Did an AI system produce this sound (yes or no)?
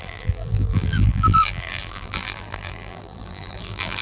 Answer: yes